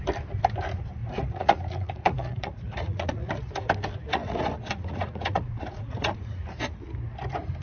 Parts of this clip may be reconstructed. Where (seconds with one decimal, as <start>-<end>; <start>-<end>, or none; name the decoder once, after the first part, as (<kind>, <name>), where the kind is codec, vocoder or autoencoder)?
1.0-3.3 (vocoder, Vocos); 4.1-6.4